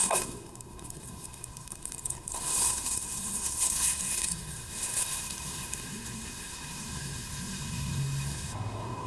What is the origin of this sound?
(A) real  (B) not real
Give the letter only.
B